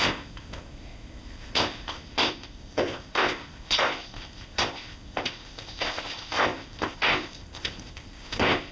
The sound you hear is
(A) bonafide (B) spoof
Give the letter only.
B